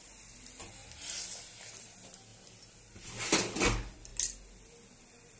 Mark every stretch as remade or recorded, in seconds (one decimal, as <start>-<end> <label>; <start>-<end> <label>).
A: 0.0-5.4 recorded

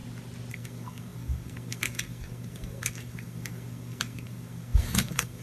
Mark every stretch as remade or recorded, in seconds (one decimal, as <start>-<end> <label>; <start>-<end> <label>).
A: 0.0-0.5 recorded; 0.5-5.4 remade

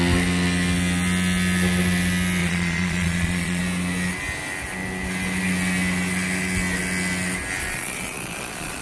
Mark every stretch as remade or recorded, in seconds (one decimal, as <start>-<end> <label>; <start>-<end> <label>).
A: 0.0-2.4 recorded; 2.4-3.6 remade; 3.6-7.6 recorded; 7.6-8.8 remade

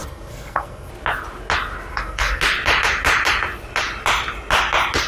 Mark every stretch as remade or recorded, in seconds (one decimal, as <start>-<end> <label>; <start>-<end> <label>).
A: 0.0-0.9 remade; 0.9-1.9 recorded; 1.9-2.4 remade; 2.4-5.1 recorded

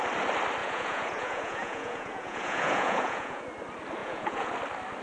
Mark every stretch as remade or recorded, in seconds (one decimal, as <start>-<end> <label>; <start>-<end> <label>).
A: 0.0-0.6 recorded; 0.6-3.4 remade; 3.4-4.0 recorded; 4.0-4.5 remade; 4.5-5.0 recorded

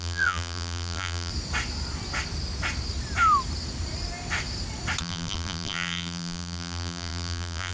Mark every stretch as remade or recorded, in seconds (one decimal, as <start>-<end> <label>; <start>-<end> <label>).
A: 0.0-1.3 remade; 1.3-5.0 recorded; 5.0-7.7 remade